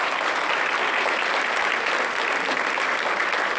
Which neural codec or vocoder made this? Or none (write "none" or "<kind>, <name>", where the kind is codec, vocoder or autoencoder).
none